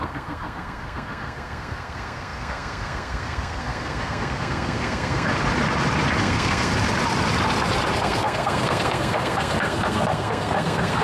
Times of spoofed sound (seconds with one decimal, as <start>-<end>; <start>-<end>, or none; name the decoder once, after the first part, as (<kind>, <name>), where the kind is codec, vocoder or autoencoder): 0.0-5.3 (codec, SNAC); 6.2-6.7; 8.0-11.0

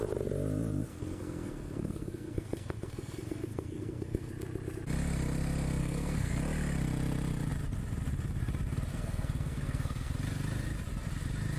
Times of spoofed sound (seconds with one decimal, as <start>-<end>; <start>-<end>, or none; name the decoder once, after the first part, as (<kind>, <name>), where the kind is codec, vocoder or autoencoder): 0.9-4.3 (codec, SNAC); 5.8-6.3; 8.9-10.1

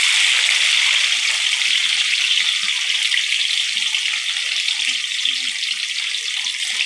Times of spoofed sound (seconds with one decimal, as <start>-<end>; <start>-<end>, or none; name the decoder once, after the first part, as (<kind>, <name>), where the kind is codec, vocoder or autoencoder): none

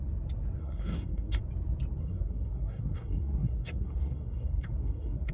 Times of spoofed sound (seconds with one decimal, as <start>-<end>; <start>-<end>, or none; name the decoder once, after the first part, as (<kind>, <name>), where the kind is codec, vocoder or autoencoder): 0.6-1.4 (codec, SNAC); 2.0-5.3

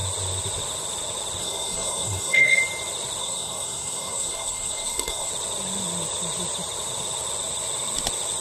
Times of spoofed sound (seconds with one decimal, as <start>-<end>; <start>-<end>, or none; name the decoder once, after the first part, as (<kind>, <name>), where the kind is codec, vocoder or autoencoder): 1.4-2.6 (codec, SNAC); 3.2-5.3

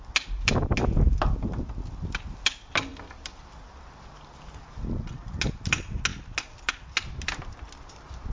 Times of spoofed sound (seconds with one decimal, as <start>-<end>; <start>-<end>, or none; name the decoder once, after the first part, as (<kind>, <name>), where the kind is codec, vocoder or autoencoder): none

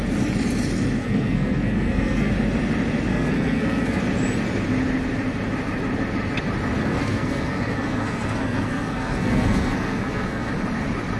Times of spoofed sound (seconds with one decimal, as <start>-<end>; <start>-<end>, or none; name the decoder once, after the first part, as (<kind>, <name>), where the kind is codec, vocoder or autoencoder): 1.0-2.3 (codec, SNAC); 3.1-4.0; 6.8-10.5

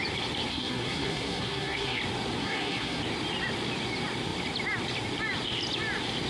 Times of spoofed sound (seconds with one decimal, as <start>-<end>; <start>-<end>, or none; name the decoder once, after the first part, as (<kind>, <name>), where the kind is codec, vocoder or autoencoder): 0.5-2.0 (codec, SNAC); 2.4-3.0